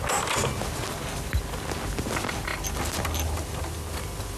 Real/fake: real